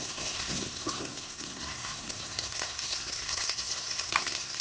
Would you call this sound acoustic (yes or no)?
no